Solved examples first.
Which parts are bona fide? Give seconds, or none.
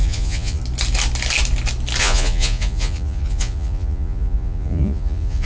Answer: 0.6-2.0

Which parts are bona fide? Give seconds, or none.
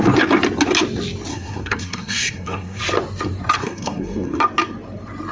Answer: 0.0-1.3; 2.8-3.6; 4.4-5.3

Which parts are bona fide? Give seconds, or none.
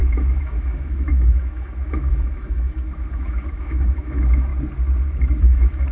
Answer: 4.5-5.4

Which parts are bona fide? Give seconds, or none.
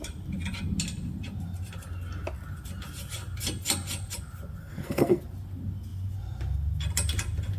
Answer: 0.0-4.6; 5.2-7.6